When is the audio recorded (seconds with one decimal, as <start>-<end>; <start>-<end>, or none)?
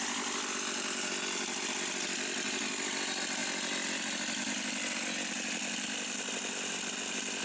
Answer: 0.0-7.4